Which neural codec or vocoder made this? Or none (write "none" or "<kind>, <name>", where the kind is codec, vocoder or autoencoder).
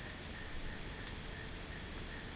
none